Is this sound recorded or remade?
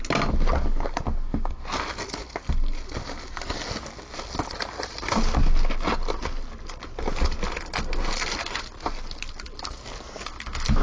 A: recorded